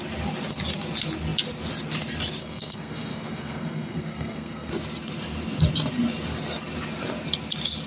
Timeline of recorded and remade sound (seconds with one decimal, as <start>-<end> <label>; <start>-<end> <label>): 0.0-2.4 recorded; 2.4-4.7 remade; 4.7-7.9 recorded